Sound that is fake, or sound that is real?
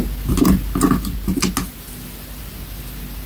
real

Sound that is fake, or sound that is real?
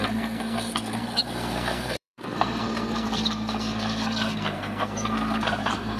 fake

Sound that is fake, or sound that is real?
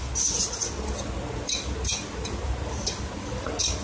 real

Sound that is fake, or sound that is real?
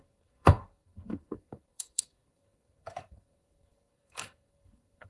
fake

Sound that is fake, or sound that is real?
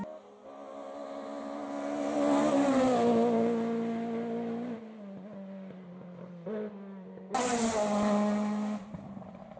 real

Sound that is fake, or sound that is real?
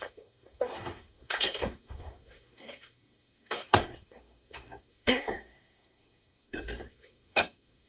fake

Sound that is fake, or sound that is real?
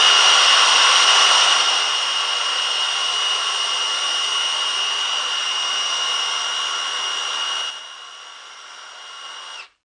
real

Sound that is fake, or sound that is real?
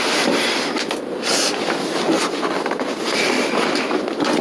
real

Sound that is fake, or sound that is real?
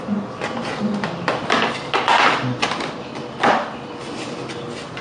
real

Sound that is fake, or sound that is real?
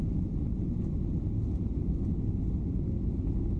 real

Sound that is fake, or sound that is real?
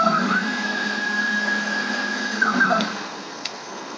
fake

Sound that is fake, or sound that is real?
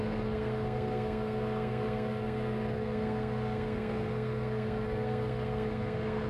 fake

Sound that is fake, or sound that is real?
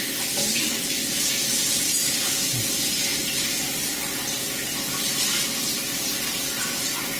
real